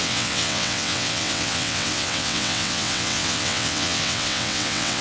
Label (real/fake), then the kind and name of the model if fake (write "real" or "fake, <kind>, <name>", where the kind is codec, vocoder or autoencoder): fake, vocoder, WaveNeXt